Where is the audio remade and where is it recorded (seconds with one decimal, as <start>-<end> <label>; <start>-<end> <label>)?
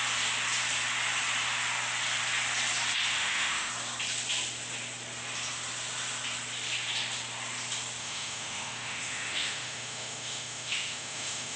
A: 0.0-3.1 recorded; 3.1-3.7 remade; 3.7-8.0 recorded; 8.0-11.6 remade